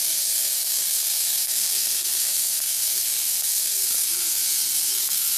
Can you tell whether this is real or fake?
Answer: fake